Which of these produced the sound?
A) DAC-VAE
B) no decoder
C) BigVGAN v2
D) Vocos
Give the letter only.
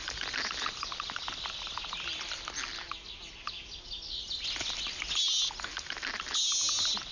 B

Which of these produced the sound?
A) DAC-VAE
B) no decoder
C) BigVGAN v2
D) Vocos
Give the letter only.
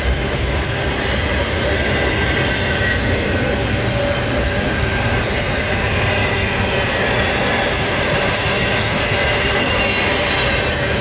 B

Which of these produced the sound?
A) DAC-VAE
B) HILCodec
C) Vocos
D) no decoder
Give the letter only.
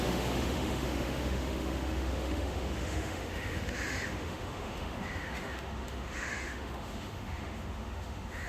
A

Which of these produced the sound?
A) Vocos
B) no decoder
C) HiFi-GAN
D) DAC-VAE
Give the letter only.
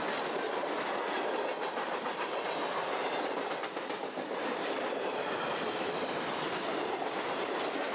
B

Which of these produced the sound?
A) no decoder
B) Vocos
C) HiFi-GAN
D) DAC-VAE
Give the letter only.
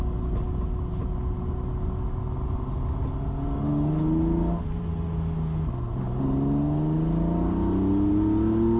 A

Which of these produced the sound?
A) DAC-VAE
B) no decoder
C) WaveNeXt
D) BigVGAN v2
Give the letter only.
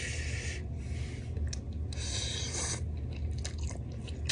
B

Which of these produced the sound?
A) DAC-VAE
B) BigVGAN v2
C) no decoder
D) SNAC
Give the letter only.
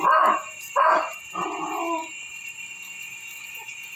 C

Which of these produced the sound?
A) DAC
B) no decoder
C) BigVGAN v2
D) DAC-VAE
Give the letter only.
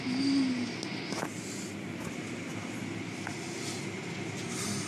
B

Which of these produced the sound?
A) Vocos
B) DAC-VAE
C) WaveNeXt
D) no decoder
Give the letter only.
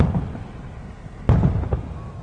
D